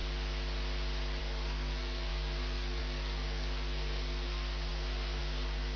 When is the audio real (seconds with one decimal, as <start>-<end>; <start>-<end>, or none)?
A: 0.0-1.2